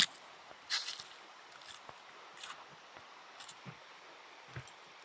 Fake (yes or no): no